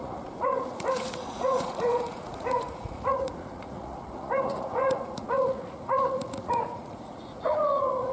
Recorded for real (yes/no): no